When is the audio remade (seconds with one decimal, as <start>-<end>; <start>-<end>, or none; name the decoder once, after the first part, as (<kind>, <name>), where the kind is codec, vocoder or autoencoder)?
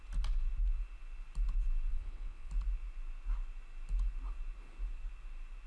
1.9-2.5 (vocoder, WaveNeXt)